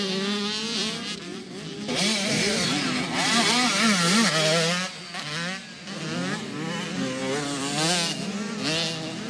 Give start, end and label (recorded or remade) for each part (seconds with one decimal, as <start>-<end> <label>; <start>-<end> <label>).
0.0-9.3 recorded